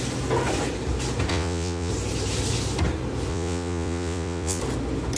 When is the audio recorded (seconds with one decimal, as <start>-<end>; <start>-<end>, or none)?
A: 0.0-1.3; 1.9-3.3; 4.6-5.2